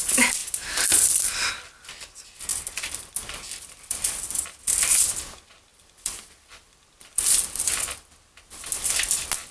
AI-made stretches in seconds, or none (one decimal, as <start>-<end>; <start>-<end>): 2.5-4.6; 5.7-8.5